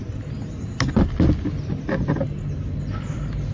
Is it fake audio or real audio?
real